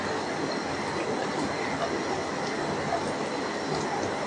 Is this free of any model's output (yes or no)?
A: yes